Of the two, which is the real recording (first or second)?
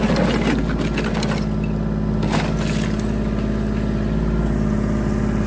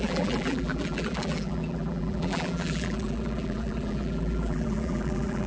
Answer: first